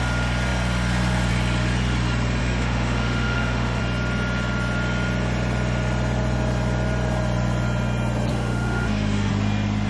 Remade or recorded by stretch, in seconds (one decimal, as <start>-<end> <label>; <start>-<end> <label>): 0.0-2.4 recorded; 2.4-3.8 remade; 3.8-8.3 recorded; 8.3-9.3 remade; 9.3-9.9 recorded